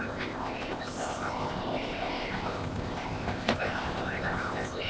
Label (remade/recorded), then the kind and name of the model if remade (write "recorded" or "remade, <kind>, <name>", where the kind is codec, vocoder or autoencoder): remade, codec, ZipCodec